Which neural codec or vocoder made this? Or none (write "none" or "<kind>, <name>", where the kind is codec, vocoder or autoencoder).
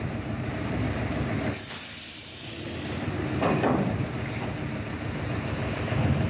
none